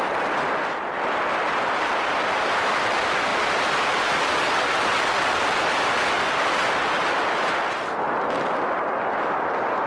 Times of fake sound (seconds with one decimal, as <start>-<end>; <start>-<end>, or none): none